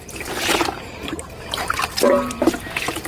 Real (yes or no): no